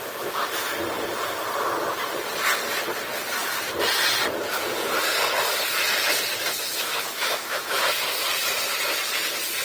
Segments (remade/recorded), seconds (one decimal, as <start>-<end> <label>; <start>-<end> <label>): 0.0-6.3 recorded; 6.3-7.8 remade; 7.8-9.6 recorded